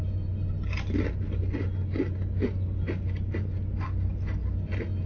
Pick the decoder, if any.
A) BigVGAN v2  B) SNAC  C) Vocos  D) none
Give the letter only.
D